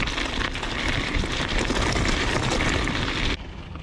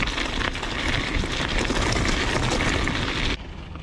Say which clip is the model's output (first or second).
first